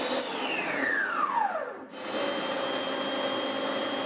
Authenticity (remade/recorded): recorded